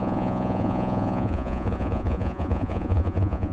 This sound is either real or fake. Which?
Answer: fake